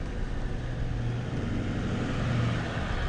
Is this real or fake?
real